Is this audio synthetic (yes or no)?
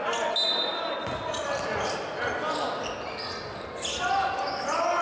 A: no